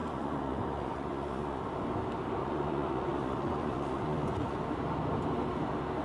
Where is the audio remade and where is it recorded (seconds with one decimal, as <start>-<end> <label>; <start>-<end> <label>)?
0.0-1.6 remade; 1.6-2.4 recorded; 2.4-4.6 remade; 4.6-6.0 recorded